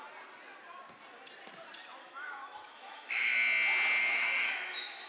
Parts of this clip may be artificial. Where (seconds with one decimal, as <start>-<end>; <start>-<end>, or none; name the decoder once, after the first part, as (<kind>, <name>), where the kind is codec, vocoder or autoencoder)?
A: 2.0-3.1 (autoencoder, DAC-VAE); 4.0-5.1